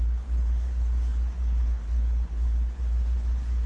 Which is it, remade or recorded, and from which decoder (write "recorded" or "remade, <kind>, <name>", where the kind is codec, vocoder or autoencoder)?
remade, codec, HILCodec